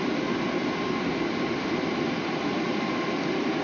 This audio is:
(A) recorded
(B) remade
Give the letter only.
A